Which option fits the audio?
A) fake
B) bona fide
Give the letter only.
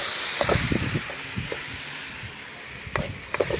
B